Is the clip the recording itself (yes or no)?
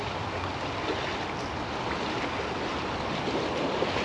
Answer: yes